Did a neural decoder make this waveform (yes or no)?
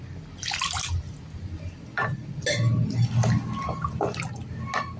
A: no